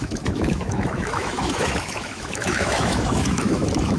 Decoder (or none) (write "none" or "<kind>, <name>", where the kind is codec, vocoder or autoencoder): autoencoder, DAC-VAE